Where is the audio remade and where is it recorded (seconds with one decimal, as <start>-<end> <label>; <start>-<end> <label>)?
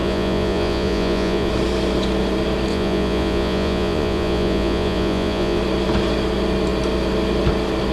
0.0-1.5 remade; 1.5-2.7 recorded; 2.7-5.6 remade; 5.6-7.9 recorded